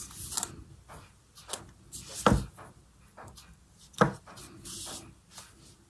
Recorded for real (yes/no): yes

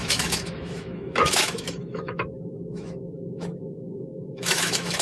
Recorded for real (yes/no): no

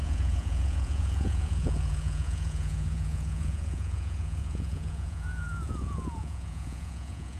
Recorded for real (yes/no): no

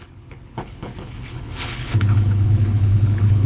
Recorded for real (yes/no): no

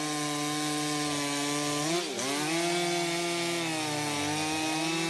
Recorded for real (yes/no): yes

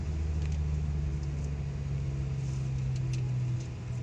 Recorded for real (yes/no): yes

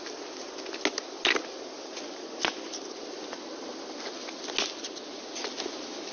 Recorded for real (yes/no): yes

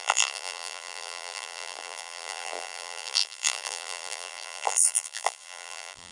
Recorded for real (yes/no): no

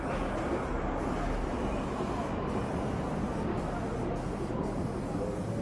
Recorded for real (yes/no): yes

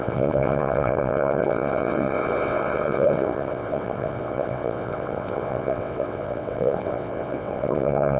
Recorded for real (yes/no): no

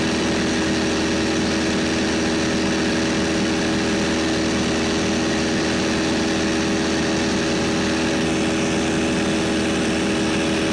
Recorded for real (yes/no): yes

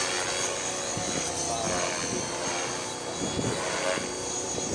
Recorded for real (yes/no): yes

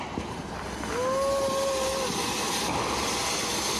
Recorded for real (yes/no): yes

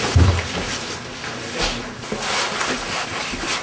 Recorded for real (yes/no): yes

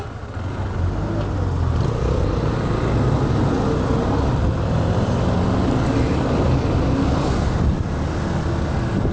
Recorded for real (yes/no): yes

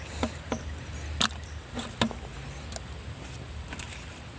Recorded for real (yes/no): yes